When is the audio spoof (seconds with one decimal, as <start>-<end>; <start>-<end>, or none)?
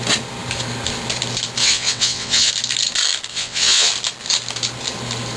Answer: 1.6-2.5; 3.3-3.9